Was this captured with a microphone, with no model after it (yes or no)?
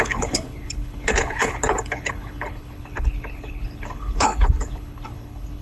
no